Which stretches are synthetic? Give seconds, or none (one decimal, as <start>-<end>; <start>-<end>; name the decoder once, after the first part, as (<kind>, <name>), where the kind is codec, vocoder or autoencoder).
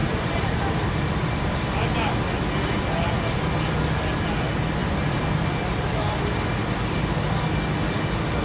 0.0-1.3 (vocoder, BigVGAN v2); 4.8-5.4